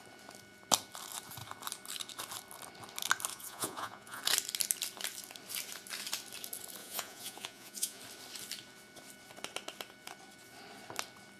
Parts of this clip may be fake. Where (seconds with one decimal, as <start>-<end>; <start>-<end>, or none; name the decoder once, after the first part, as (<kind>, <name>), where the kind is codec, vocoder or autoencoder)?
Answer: 3.3-4.2 (vocoder, Vocos); 6.8-8.0